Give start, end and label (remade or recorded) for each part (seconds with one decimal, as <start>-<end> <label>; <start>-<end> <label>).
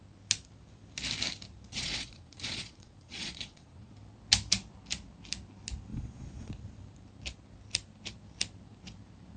0.0-1.7 recorded; 1.7-3.9 remade; 3.9-5.9 recorded; 5.9-6.5 remade; 6.5-9.4 recorded